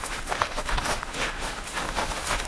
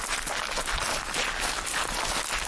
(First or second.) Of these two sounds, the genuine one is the second